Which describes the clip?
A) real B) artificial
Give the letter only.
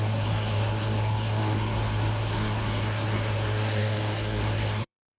B